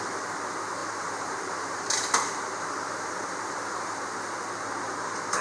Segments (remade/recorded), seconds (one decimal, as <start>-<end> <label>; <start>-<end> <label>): 0.0-0.8 recorded; 0.8-4.0 remade; 4.0-5.4 recorded